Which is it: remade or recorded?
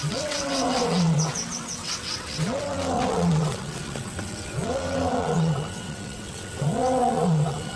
remade